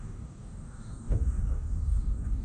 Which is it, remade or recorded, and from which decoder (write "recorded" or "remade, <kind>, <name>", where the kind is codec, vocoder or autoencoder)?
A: remade, codec, DAC